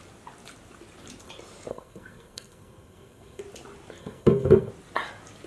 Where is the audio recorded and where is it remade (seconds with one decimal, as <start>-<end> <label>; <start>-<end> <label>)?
0.0-1.7 recorded; 1.7-3.4 remade; 3.4-4.0 recorded; 4.0-4.7 remade; 4.7-5.5 recorded